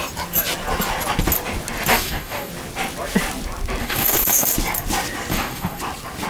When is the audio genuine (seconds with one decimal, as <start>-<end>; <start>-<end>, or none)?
0.0-1.9; 2.5-3.8; 4.5-5.3; 5.8-6.3